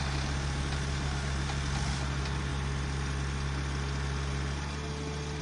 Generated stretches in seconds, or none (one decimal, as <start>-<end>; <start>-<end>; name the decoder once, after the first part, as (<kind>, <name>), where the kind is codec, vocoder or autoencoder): none